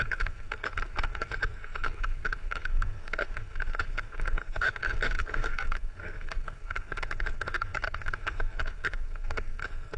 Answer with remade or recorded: remade